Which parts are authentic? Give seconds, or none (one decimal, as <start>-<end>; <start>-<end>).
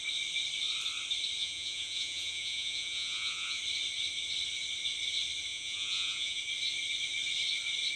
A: 0.0-1.4; 3.6-5.5; 6.4-8.0